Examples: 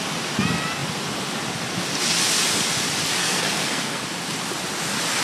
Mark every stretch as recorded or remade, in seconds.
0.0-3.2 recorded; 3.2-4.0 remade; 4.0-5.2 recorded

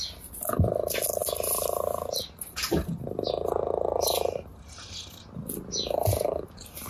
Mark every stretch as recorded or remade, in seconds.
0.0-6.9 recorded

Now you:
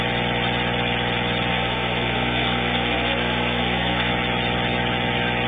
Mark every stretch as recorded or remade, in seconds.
0.0-1.5 recorded; 1.5-4.1 remade; 4.1-5.5 recorded